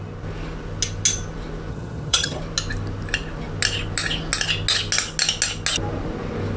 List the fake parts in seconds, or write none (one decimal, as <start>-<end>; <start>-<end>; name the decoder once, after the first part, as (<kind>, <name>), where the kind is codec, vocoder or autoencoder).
1.7-2.4 (vocoder, HiFi-GAN)